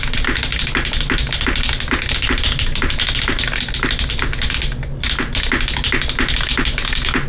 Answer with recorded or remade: recorded